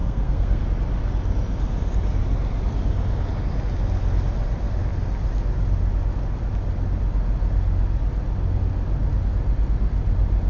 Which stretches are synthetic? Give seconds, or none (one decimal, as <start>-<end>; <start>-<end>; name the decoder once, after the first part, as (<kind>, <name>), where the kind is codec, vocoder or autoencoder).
0.0-0.6 (codec, SNAC)